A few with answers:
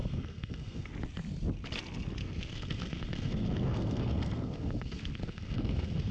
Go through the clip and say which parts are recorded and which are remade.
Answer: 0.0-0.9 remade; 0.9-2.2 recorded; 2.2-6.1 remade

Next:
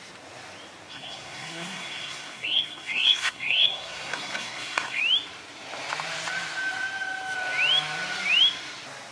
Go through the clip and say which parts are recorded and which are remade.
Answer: 0.0-0.9 recorded; 0.9-5.0 remade; 5.0-9.1 recorded

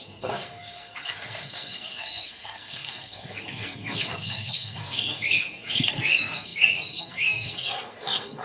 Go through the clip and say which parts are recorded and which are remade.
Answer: 0.0-8.4 remade

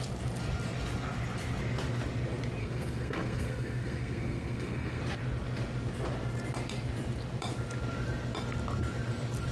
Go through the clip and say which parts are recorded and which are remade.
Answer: 0.0-2.6 recorded; 2.6-5.0 remade; 5.0-9.5 recorded

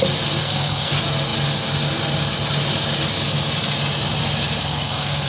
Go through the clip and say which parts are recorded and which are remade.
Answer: 0.0-0.4 recorded; 0.4-0.9 remade; 0.9-4.6 recorded; 4.6-5.3 remade

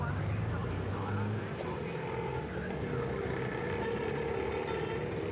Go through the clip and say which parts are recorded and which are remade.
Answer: 0.0-5.3 recorded

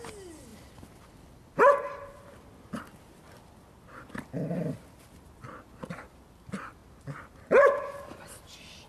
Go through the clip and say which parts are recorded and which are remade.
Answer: 0.0-8.9 recorded

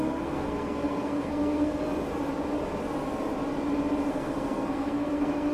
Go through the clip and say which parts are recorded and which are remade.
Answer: 0.0-1.8 remade; 1.8-4.1 recorded; 4.1-5.5 remade